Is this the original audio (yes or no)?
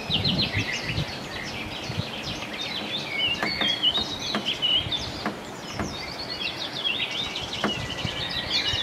yes